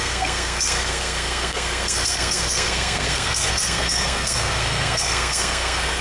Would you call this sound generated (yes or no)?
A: yes